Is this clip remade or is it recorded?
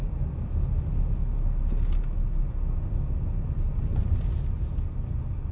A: recorded